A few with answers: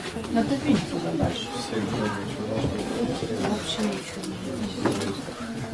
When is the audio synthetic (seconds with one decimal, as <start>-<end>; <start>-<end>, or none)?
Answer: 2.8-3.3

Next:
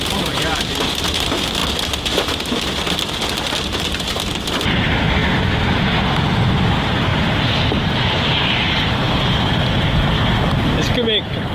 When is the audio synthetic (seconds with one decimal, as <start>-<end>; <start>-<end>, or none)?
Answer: 7.1-9.7

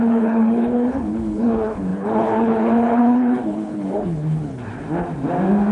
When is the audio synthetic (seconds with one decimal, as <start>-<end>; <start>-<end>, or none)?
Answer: 0.0-4.6

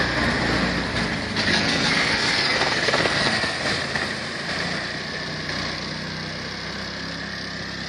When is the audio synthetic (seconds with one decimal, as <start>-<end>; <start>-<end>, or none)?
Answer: 1.5-3.6

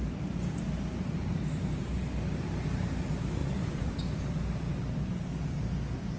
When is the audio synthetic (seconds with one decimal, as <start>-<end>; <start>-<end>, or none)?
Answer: 3.4-3.9